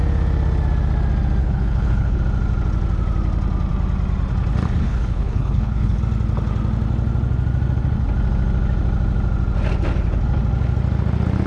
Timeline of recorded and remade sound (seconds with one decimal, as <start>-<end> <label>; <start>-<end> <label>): 0.0-1.4 recorded; 1.4-2.2 remade; 2.2-4.8 recorded; 4.8-6.0 remade; 6.0-11.5 recorded